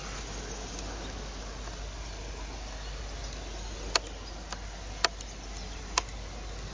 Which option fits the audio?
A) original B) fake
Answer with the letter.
A